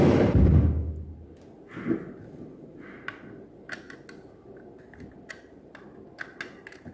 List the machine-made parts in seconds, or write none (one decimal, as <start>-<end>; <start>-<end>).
none